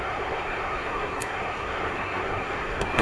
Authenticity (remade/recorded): remade